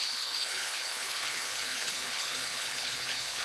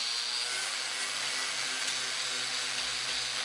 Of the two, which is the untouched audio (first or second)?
second